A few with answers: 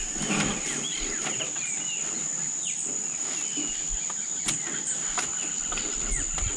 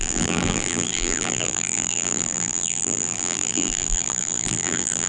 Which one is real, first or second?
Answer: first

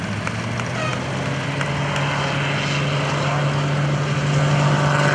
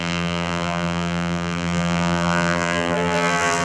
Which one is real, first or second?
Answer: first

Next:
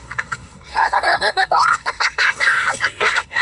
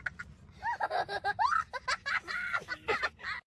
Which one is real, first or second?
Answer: second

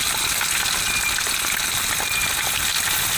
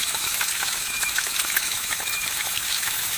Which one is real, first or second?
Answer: first